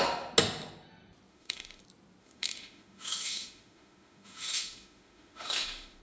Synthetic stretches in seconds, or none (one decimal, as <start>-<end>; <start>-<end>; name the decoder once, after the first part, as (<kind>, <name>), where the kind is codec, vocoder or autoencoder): 1.3-1.8 (autoencoder, DAC-VAE); 2.2-6.0